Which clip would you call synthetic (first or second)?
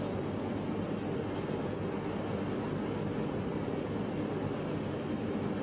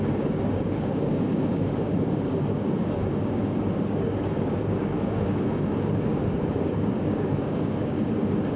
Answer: second